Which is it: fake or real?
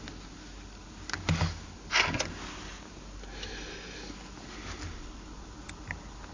real